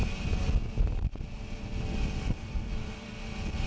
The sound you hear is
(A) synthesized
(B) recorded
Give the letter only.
B